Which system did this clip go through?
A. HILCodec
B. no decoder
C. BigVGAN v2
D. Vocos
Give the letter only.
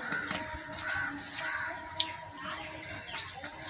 B